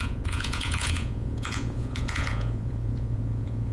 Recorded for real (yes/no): no